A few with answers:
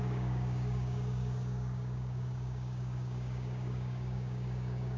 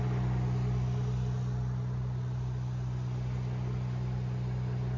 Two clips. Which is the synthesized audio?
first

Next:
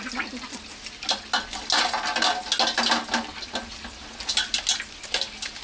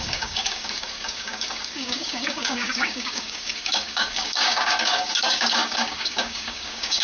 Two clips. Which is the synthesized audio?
second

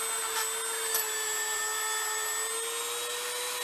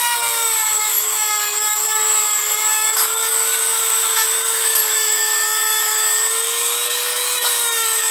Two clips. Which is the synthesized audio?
second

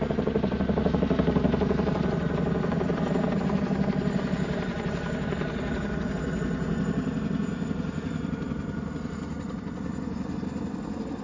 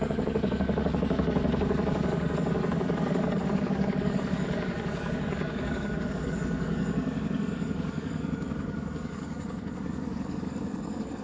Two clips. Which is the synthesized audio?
second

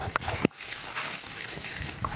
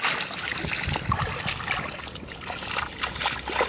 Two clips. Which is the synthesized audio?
first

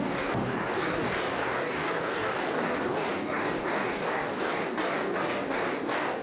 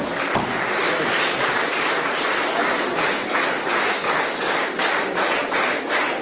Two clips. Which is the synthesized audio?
first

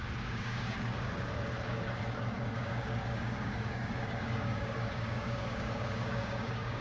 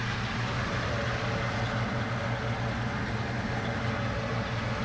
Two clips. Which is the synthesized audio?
first